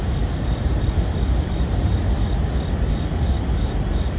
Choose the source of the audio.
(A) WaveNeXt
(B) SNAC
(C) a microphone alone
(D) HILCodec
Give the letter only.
C